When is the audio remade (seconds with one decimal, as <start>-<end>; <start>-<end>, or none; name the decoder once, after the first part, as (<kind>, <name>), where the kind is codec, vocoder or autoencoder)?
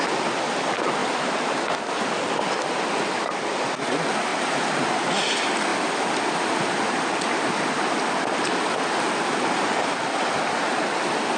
none